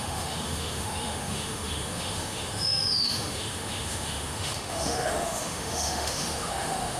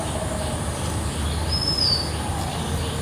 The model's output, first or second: first